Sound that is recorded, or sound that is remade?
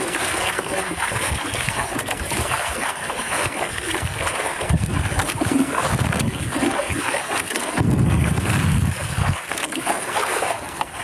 remade